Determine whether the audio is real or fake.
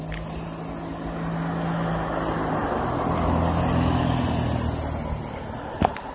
real